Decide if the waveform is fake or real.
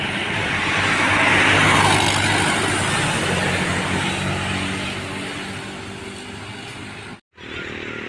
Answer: real